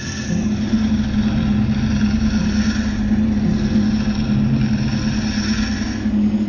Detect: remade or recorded recorded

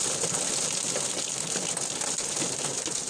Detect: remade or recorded recorded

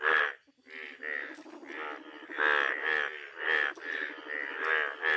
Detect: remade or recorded recorded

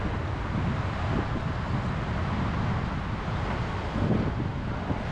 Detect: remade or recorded recorded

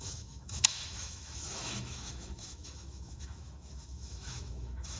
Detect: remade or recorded remade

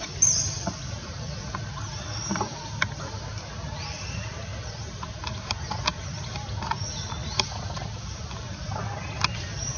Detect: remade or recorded recorded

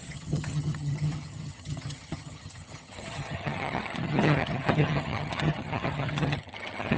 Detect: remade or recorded remade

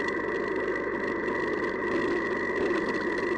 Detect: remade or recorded recorded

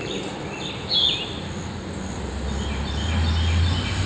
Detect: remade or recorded recorded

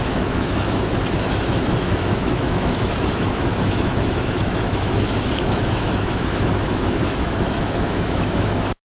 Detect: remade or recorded remade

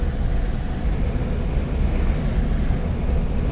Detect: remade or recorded recorded